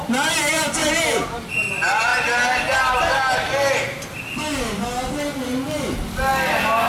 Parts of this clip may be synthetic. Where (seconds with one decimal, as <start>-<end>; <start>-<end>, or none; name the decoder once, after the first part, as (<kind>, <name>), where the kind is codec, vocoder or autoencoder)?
none